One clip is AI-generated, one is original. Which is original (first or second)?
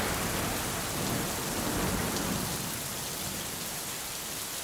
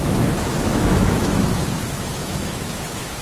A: first